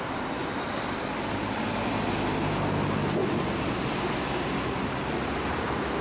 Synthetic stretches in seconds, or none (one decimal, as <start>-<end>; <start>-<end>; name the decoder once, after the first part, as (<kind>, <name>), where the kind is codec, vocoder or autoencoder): 3.2-3.8 (vocoder, BigVGAN v2)